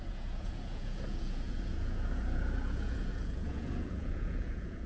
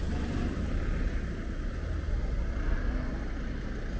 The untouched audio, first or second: second